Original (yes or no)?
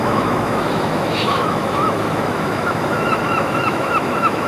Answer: no